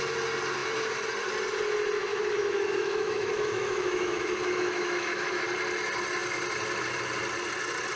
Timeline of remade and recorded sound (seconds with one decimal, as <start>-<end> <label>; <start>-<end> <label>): 0.0-2.1 recorded; 2.1-5.4 remade; 5.4-8.0 recorded